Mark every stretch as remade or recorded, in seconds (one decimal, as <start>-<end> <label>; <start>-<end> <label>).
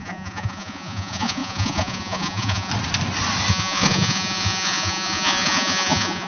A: 0.0-2.7 remade; 2.7-3.5 recorded; 3.5-6.3 remade